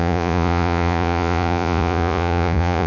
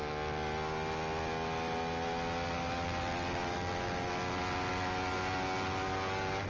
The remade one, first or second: first